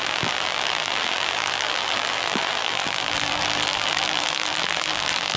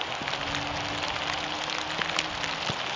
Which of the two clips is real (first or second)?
second